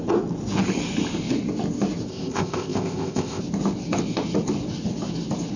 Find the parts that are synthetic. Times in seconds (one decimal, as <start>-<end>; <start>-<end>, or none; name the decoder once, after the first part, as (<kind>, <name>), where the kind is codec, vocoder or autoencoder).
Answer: 2.1-3.4 (codec, ZipCodec)